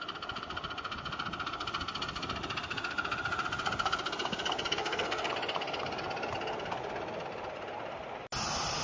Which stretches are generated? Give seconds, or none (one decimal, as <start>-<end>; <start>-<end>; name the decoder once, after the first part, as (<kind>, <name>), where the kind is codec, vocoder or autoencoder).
4.8-5.3 (codec, SNAC)